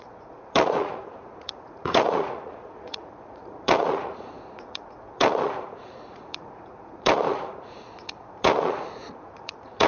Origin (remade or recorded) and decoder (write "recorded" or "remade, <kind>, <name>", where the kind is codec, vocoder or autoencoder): remade, vocoder, Vocos